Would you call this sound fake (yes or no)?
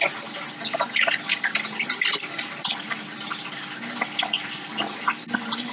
no